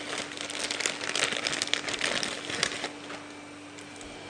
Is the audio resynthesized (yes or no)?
no